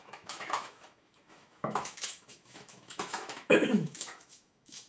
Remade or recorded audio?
remade